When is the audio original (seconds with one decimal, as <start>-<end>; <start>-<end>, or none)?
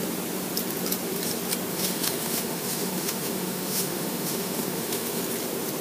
0.0-1.7; 5.2-5.8